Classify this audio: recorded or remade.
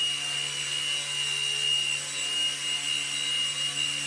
recorded